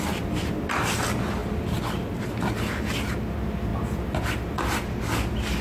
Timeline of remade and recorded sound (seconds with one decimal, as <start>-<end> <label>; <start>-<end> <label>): 0.0-5.6 recorded